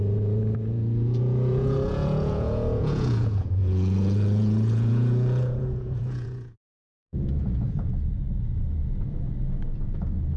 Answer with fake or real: fake